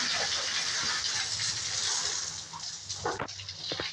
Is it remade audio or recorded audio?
recorded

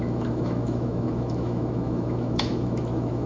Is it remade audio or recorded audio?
remade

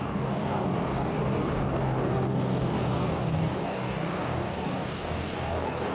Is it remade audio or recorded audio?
remade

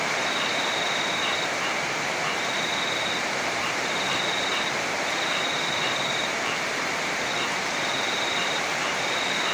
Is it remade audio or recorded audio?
remade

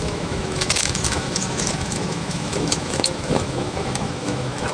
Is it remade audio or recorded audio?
remade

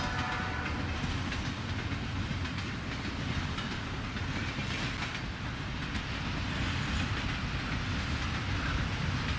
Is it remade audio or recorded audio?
recorded